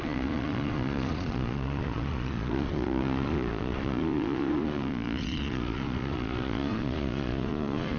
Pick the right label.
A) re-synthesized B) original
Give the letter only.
A